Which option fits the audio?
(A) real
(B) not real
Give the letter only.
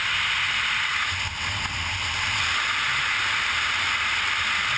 A